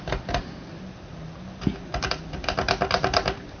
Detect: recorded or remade recorded